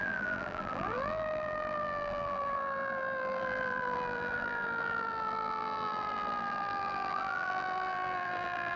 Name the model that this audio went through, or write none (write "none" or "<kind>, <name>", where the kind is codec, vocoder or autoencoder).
vocoder, BigVGAN v2